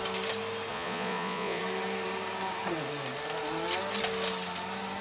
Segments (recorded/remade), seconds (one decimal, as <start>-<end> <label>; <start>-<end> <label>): 0.0-0.7 recorded; 0.7-1.6 remade; 1.6-5.0 recorded

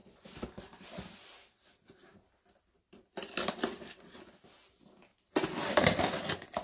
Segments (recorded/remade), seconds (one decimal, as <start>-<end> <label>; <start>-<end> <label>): 0.0-6.6 recorded

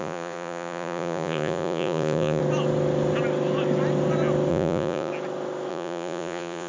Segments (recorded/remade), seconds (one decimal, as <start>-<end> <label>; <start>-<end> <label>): 0.0-2.4 remade; 2.4-4.5 recorded; 4.5-5.1 remade; 5.1-5.7 recorded; 5.7-6.7 remade